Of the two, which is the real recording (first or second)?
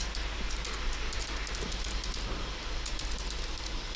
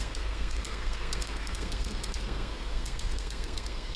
first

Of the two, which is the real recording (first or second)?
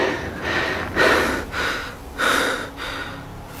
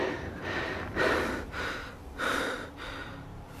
first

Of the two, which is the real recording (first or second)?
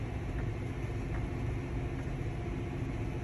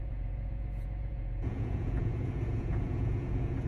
first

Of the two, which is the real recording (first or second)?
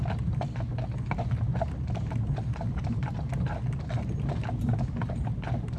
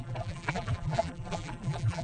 first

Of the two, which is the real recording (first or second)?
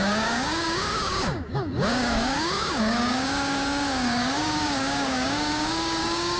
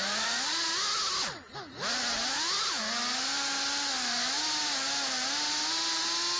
second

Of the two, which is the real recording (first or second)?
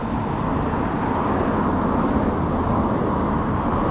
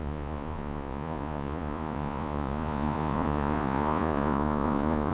first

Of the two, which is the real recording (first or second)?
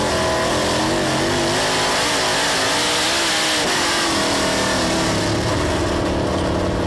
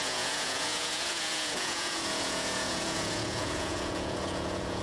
first